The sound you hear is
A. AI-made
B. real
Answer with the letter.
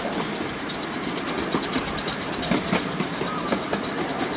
B